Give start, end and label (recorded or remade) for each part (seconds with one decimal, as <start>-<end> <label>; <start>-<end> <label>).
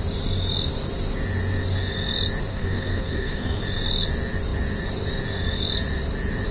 0.0-2.5 recorded; 2.5-3.6 remade; 3.6-6.5 recorded